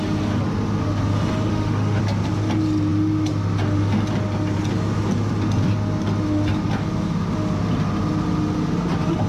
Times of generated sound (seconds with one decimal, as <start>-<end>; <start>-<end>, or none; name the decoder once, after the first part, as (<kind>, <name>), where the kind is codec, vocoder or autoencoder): 1.5-2.0 (autoencoder, DAC-VAE)